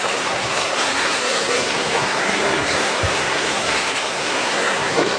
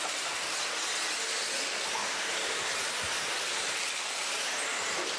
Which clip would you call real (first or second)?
second